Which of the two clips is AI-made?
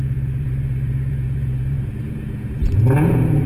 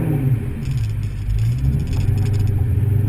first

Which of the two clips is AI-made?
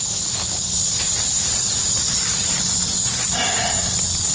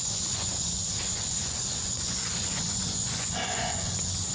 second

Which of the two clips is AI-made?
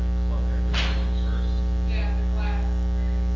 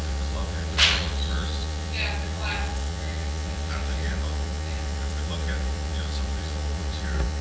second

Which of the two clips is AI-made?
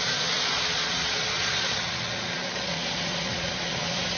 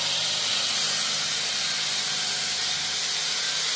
first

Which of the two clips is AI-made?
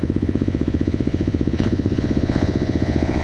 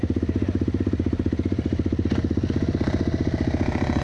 first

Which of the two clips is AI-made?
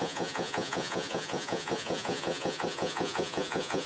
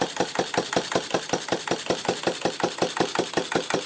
first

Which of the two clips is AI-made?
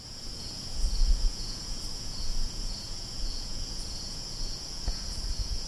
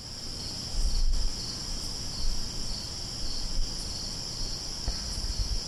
first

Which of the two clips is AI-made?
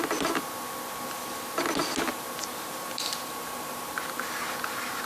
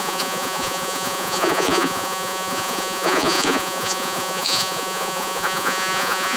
second